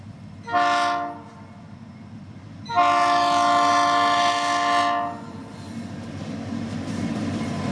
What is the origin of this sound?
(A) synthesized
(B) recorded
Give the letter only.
B